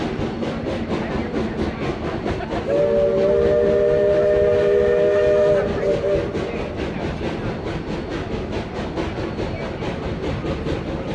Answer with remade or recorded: recorded